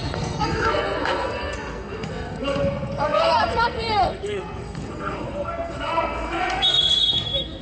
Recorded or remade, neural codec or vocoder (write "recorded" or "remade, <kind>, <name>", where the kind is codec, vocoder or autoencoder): remade, codec, SNAC